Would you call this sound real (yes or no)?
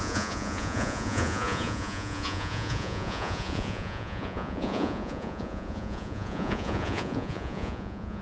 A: no